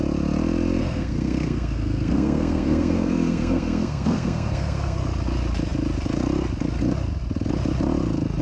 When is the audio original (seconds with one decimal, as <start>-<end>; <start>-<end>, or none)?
0.0-0.8; 5.0-8.4